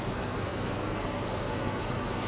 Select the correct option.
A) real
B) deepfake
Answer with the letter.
B